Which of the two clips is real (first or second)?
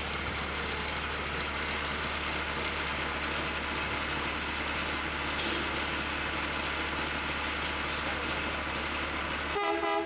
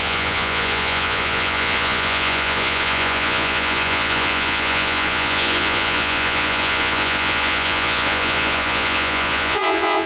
first